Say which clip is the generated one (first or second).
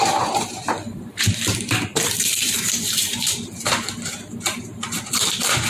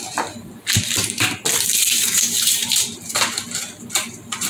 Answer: first